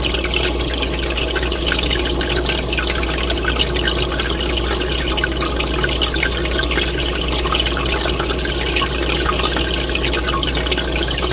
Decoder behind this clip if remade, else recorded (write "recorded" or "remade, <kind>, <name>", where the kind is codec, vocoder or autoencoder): recorded